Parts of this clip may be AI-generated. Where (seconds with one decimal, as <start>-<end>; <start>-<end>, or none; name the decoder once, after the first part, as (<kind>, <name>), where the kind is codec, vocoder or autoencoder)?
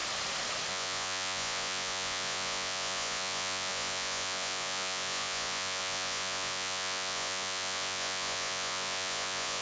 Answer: 0.7-9.6 (vocoder, Vocos)